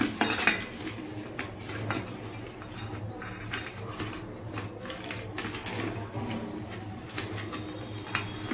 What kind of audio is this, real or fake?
real